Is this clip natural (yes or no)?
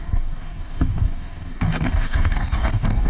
no